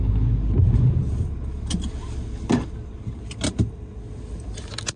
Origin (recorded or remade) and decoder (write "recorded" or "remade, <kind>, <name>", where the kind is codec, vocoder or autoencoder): recorded